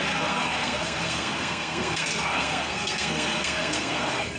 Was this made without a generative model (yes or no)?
no